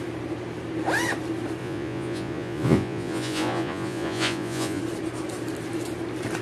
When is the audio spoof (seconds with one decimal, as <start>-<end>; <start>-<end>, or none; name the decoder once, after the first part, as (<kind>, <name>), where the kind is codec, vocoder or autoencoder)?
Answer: 1.6-4.8 (vocoder, Vocos)